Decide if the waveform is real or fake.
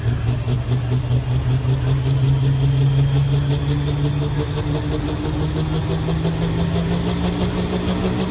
real